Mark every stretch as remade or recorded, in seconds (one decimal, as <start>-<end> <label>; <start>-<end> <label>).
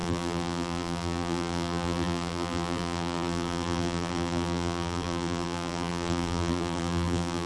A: 0.0-7.5 remade